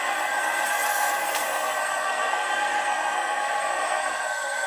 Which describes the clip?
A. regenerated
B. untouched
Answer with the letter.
A